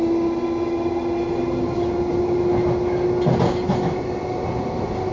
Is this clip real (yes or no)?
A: yes